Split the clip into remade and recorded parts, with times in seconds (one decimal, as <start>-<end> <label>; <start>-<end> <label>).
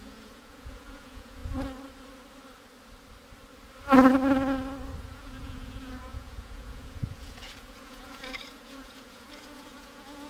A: 0.0-1.4 remade; 1.4-5.0 recorded; 5.0-10.3 remade